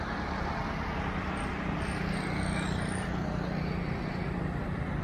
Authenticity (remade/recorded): recorded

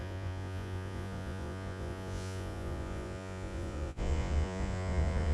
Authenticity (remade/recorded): remade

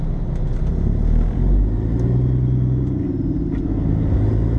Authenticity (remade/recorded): recorded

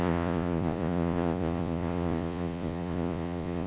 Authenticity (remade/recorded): remade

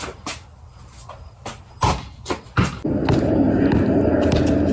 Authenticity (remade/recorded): recorded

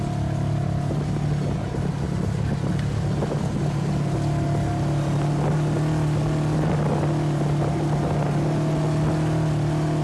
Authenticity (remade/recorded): recorded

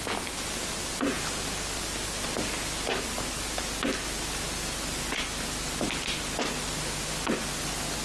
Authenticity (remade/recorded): recorded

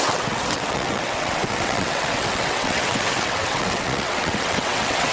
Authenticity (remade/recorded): remade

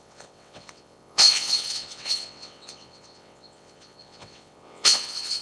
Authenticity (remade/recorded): remade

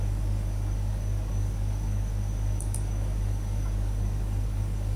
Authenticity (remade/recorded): remade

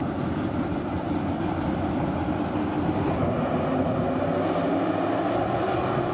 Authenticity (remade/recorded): recorded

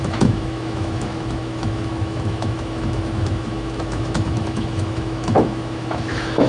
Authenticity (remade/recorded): remade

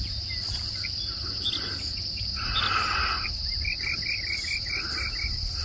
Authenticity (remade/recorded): recorded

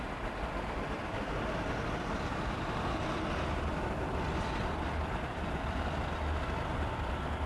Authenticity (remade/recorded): recorded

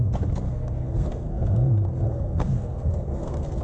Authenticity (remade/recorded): remade